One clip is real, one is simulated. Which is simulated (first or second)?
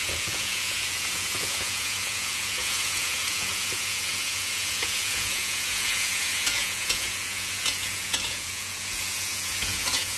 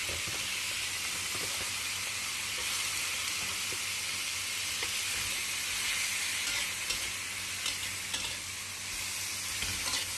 first